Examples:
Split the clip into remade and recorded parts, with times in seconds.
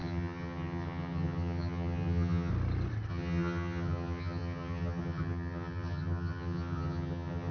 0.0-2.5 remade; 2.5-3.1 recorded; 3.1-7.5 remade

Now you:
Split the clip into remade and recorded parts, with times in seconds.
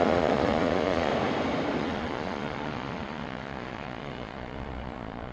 0.0-1.1 remade; 1.1-1.8 recorded; 1.8-5.3 remade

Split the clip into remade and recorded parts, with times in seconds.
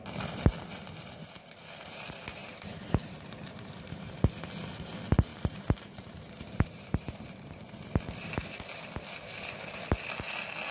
0.0-2.4 recorded; 2.4-4.1 remade; 4.1-5.3 recorded; 5.3-8.3 remade; 8.3-10.7 recorded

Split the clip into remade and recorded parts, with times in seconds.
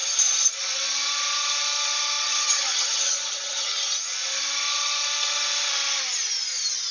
0.0-2.3 recorded; 2.3-3.7 remade; 3.7-6.9 recorded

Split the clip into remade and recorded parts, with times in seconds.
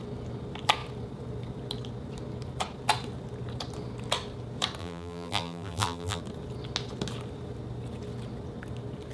0.0-4.8 recorded; 4.8-6.2 remade; 6.2-9.1 recorded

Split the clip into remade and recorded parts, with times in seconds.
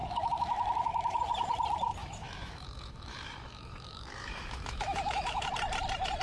0.0-1.2 remade; 1.2-2.0 recorded; 2.0-5.5 remade; 5.5-6.2 recorded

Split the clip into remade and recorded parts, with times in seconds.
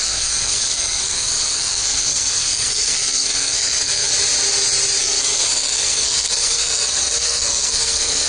0.0-4.1 remade; 4.1-5.0 recorded; 5.0-8.3 remade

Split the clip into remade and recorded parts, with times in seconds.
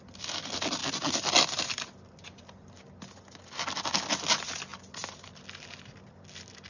0.0-6.7 recorded